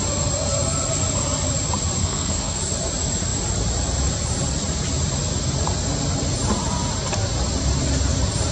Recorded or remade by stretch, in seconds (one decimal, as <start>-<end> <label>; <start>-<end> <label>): 0.0-2.0 recorded; 2.0-2.6 remade; 2.6-8.5 recorded